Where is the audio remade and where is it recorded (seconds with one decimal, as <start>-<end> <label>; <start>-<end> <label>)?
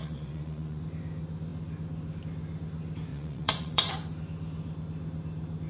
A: 0.0-0.8 remade; 0.8-3.1 recorded; 3.1-3.9 remade; 3.9-5.7 recorded